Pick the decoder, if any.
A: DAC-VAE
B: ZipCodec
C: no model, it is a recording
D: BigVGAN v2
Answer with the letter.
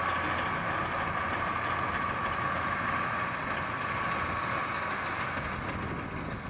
C